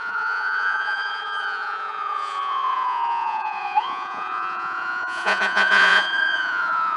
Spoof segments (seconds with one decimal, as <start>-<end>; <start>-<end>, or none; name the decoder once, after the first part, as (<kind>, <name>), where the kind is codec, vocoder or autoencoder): 0.0-7.0 (vocoder, Vocos)